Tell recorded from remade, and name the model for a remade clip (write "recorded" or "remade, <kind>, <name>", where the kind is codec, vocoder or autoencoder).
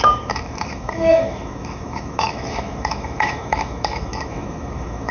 remade, autoencoder, DAC-VAE